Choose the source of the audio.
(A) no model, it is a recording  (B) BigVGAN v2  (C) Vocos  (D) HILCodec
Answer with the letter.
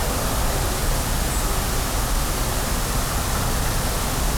A